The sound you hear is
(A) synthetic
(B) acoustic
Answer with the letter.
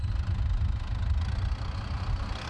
B